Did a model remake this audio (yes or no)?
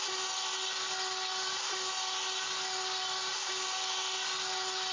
no